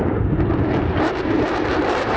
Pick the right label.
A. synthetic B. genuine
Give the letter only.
A